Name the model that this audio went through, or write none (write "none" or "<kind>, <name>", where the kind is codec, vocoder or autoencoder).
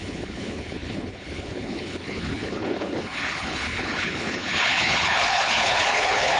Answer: codec, HILCodec